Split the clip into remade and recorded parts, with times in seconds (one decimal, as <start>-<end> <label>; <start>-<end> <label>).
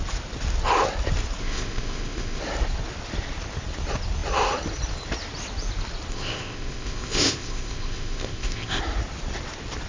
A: 0.0-1.4 recorded; 1.4-2.4 remade; 2.4-6.1 recorded; 6.1-8.8 remade; 8.8-9.9 recorded